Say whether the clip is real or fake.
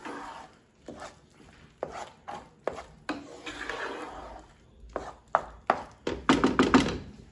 real